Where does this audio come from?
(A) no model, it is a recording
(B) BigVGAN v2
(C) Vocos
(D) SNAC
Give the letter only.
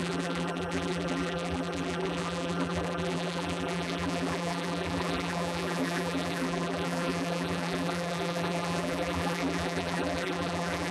B